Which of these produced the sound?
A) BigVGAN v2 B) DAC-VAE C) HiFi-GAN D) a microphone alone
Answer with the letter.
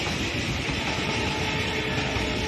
D